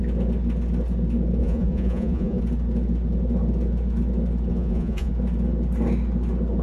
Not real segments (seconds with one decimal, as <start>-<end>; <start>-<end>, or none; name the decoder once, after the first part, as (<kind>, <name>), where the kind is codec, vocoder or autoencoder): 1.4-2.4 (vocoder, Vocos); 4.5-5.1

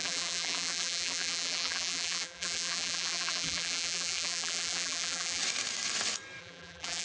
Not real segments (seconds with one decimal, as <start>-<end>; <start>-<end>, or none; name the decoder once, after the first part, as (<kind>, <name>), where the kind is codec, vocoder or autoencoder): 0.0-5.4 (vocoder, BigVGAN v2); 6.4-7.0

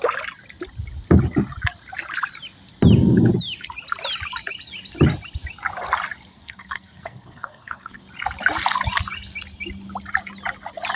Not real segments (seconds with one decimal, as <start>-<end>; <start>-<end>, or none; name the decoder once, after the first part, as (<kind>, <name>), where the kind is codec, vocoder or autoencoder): 6.3-8.0 (codec, SNAC)